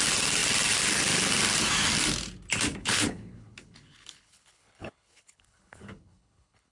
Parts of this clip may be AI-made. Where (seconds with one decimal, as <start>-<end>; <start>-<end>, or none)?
2.7-6.7